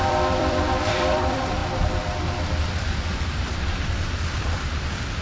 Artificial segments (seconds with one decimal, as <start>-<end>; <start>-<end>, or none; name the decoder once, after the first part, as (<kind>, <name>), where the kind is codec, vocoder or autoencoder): 0.0-1.6 (vocoder, BigVGAN v2); 2.6-5.2